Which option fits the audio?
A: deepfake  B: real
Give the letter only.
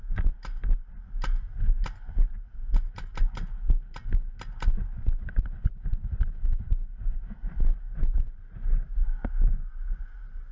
B